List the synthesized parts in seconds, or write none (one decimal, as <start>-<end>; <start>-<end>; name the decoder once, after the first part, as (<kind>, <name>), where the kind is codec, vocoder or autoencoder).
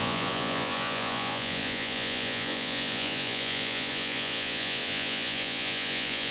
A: 0.0-6.3 (vocoder, Vocos)